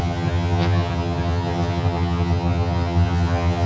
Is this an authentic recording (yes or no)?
no